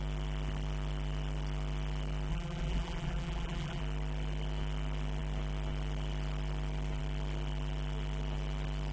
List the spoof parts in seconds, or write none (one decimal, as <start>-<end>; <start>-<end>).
2.3-3.8